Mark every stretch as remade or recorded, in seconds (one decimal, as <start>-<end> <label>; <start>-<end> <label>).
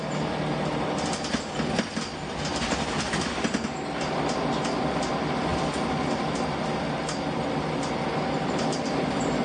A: 0.0-9.4 recorded